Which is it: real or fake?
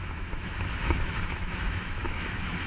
fake